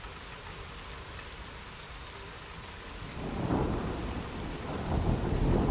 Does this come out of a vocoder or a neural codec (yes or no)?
no